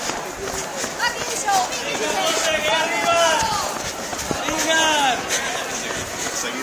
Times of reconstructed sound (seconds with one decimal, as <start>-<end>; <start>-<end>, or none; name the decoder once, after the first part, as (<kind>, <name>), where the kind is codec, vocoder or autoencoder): none